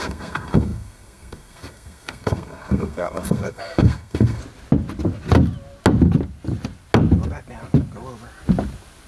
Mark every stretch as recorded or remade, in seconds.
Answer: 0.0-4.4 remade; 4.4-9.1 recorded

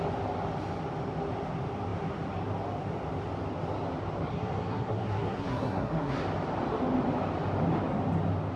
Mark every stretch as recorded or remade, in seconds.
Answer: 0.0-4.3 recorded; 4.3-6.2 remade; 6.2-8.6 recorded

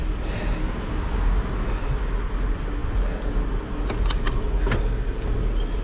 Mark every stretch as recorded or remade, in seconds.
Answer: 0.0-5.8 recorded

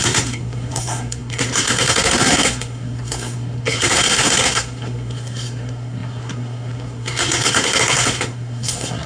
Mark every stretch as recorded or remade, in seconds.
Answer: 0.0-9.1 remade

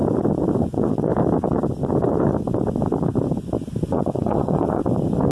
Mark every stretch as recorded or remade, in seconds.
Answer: 0.0-0.6 recorded; 0.6-1.1 remade; 1.1-3.9 recorded; 3.9-4.8 remade; 4.8-5.3 recorded

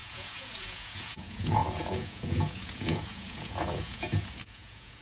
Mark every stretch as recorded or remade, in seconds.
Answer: 0.0-5.0 remade

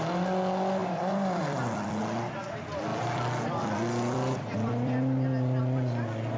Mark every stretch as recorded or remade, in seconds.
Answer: 0.0-0.8 recorded; 0.8-2.0 remade; 2.0-2.9 recorded; 2.9-5.6 remade; 5.6-6.4 recorded